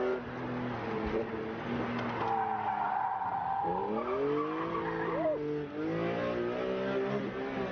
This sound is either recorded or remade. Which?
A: recorded